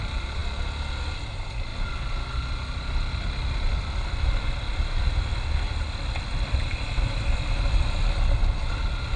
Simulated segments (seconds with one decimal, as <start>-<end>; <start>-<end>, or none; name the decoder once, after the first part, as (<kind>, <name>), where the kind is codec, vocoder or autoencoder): none